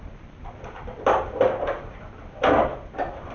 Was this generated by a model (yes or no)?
yes